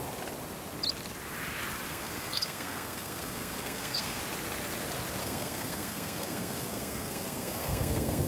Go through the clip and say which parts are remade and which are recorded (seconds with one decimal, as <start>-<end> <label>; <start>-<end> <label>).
0.0-1.9 recorded; 1.9-4.2 remade; 4.2-5.2 recorded; 5.2-8.3 remade